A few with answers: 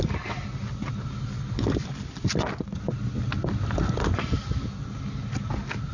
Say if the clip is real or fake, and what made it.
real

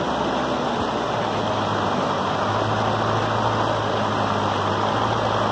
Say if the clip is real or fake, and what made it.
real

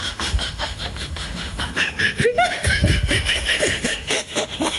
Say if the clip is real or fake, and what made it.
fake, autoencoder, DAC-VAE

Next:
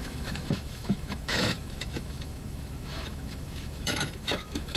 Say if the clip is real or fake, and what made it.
fake, autoencoder, DAC-VAE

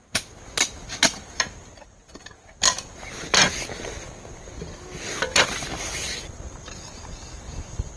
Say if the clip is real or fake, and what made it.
real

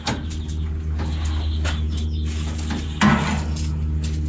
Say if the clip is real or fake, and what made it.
real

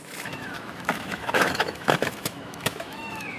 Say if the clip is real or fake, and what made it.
fake, autoencoder, DAC-VAE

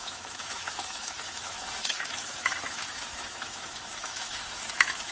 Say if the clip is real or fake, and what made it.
fake, autoencoder, DAC-VAE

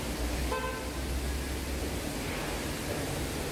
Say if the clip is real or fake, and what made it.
real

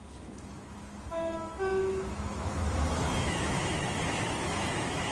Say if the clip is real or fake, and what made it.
fake, autoencoder, DAC-VAE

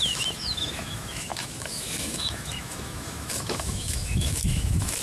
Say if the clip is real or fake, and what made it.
fake, autoencoder, DAC-VAE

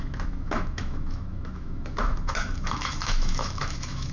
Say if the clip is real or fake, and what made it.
fake, autoencoder, DAC-VAE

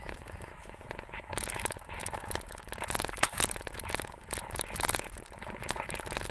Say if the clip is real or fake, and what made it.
fake, autoencoder, DAC-VAE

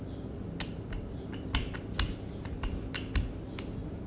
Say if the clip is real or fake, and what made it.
real